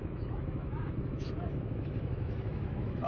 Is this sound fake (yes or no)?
yes